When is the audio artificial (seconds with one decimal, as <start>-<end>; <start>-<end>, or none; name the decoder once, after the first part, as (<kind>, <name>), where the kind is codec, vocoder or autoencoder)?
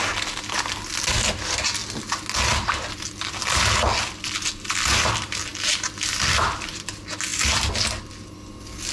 none